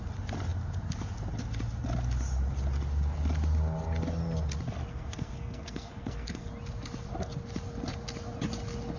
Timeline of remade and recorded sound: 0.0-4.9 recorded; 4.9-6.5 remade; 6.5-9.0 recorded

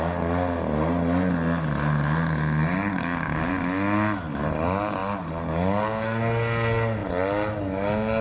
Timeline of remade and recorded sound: 0.0-2.9 recorded; 2.9-3.5 remade; 3.5-8.2 recorded

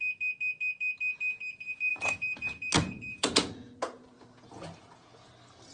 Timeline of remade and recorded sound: 0.0-1.9 recorded; 1.9-5.3 remade; 5.3-5.7 recorded

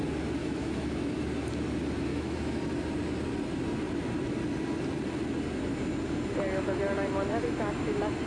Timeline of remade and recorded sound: 0.0-0.4 recorded; 0.4-1.1 remade; 1.1-2.1 recorded; 2.1-2.6 remade; 2.6-8.3 recorded

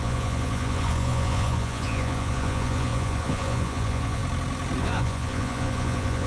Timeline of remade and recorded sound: 0.0-4.2 remade; 4.2-4.8 recorded; 4.8-6.3 remade

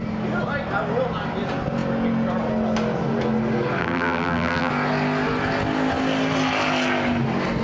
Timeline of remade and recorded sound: 0.0-3.8 recorded; 3.8-4.7 remade; 4.7-7.6 recorded

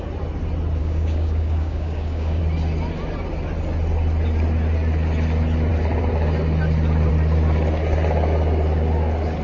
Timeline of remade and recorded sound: 0.0-0.8 recorded; 0.8-2.4 remade; 2.4-9.4 recorded